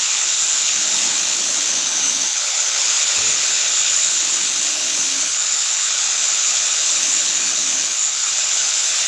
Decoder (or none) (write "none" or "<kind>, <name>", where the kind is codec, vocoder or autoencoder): codec, HILCodec